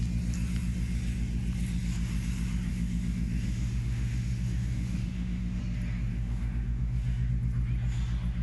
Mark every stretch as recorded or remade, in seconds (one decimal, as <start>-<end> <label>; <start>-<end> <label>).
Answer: 0.0-2.7 recorded; 2.7-5.6 remade; 5.6-6.1 recorded; 6.1-7.3 remade; 7.3-8.4 recorded